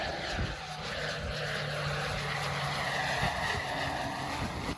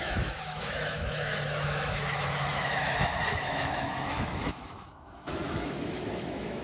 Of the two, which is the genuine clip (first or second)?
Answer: first